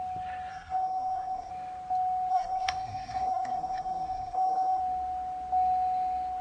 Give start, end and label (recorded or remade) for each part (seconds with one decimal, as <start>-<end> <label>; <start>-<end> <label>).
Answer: 0.0-0.5 recorded; 0.5-1.5 remade; 1.5-2.3 recorded; 2.3-4.8 remade; 4.8-6.4 recorded